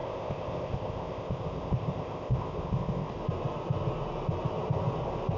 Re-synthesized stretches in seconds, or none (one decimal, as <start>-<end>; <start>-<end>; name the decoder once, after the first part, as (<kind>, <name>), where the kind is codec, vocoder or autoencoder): 0.0-3.2 (codec, ZipCodec)